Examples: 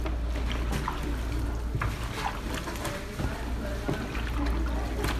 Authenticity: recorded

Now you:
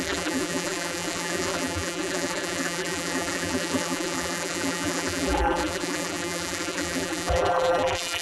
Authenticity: remade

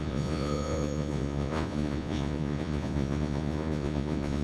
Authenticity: remade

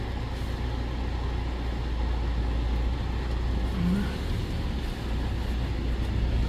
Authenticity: recorded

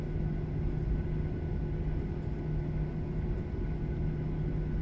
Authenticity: recorded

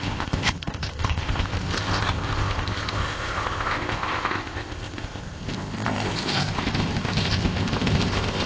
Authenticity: remade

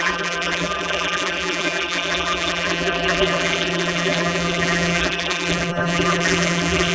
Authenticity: remade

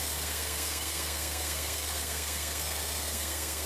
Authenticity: remade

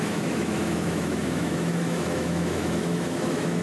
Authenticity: remade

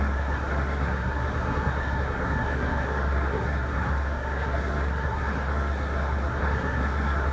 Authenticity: remade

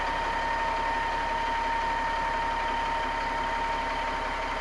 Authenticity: recorded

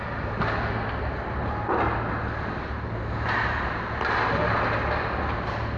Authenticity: recorded